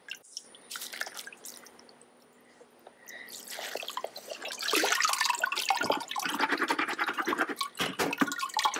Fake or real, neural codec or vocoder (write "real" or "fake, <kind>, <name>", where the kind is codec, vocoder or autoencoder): real